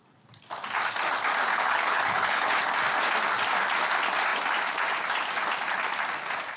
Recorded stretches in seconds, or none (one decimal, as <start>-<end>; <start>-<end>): 0.0-1.5; 2.6-6.6